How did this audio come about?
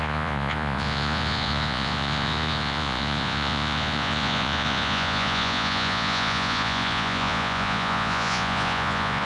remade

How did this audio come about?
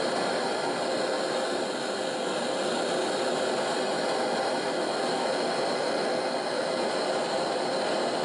recorded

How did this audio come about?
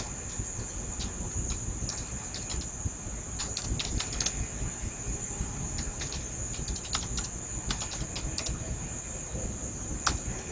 recorded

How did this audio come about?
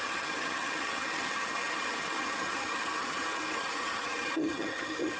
remade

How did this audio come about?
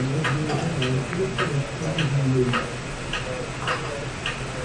recorded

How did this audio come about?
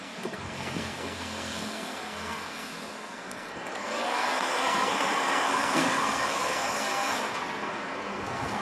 remade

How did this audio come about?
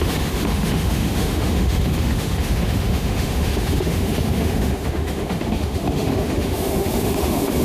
remade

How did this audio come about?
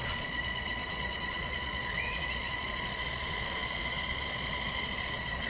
remade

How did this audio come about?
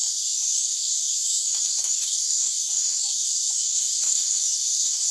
remade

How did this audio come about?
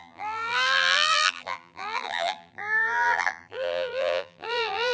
remade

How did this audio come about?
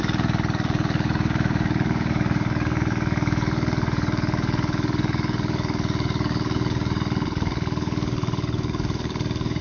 remade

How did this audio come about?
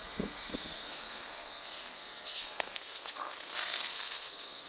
remade